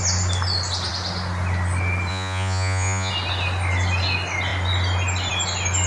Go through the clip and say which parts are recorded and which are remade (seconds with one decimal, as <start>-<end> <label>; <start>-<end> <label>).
0.0-2.1 recorded; 2.1-3.1 remade; 3.1-5.9 recorded